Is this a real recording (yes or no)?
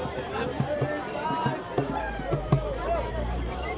no